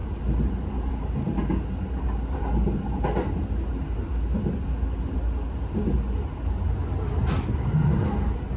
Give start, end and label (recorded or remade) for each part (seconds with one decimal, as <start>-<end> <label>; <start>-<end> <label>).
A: 0.0-8.6 recorded